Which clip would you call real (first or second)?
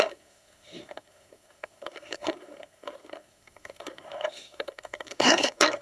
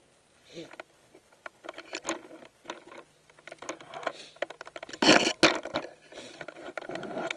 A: second